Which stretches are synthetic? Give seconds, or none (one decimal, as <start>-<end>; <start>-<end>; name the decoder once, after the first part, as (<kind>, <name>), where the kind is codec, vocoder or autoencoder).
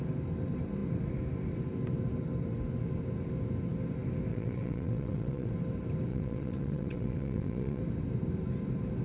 4.3-5.5 (vocoder, WaveNeXt); 6.1-7.8